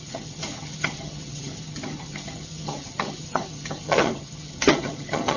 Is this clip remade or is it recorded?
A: remade